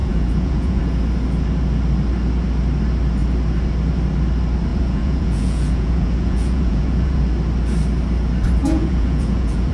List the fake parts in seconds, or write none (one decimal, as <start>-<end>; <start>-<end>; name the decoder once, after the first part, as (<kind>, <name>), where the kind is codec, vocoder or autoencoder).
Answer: 0.0-0.8 (vocoder, Vocos); 4.7-7.2; 8.6-9.7